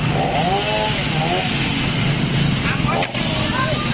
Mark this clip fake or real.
real